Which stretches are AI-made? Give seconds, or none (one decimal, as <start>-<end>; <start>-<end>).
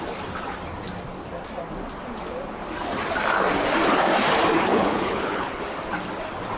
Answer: 4.7-5.6